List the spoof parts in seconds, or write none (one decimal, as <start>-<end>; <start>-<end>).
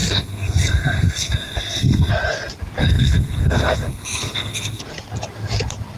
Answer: 0.0-2.1; 2.8-4.8